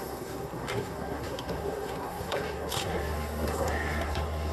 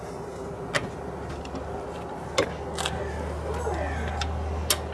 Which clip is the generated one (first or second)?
first